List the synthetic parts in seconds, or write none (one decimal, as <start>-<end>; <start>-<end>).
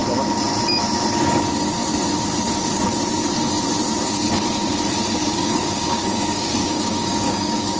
5.2-7.8